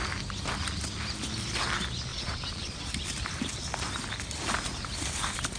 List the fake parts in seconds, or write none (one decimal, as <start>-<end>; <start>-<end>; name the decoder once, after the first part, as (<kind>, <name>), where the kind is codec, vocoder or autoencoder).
2.1-2.8 (vocoder, Vocos)